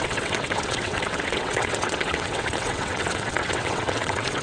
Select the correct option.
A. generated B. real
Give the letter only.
A